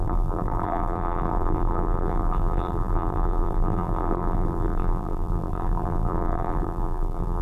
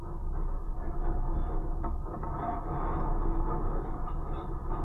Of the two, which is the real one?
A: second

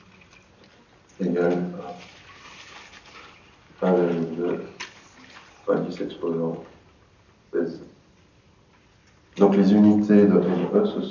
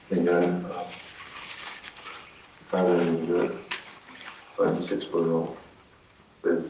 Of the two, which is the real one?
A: first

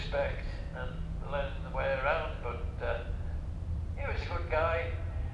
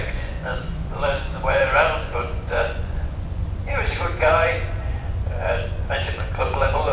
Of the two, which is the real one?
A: first